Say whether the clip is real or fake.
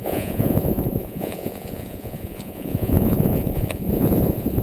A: fake